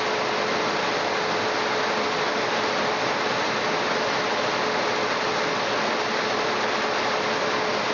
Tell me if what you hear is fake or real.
real